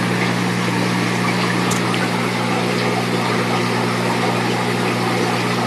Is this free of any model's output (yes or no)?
yes